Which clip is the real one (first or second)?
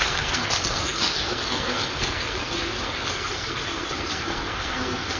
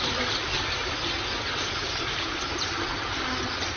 second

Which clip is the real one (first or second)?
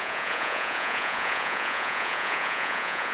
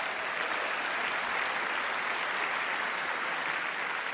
second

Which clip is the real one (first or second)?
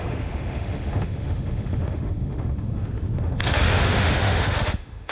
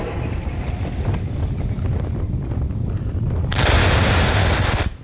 second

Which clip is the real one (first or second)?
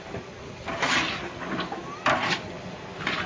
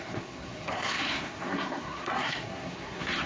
first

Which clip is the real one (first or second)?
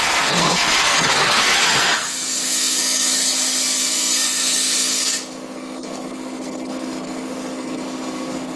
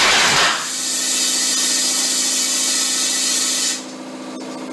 second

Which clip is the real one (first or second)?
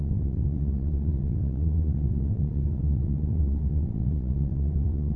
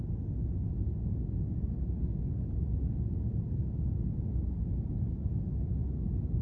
second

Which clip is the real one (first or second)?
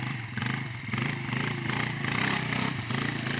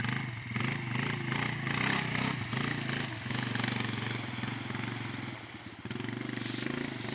second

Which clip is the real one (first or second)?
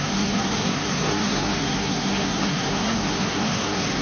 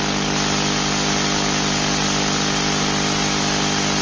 second